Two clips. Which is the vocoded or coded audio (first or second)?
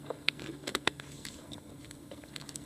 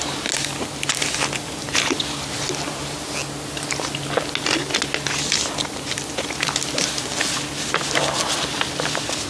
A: first